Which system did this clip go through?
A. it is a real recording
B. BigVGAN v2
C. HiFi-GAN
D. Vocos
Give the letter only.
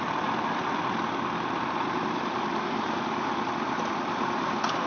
A